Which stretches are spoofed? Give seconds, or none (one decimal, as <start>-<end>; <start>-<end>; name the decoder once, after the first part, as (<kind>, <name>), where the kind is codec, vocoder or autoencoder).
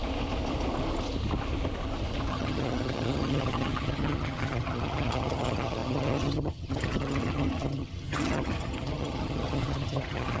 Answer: 2.3-10.4 (vocoder, HiFi-GAN)